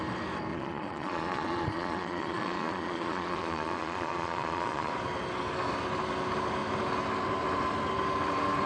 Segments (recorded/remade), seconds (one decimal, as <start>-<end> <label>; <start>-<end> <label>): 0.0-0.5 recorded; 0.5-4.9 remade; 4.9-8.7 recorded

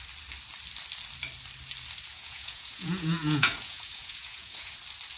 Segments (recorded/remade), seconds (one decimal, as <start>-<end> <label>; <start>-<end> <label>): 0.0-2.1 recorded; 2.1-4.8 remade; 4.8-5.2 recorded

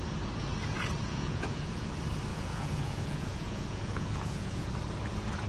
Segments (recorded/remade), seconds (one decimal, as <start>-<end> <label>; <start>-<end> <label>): 0.0-1.1 recorded; 1.1-1.9 remade; 1.9-2.3 recorded; 2.3-4.7 remade; 4.7-5.5 recorded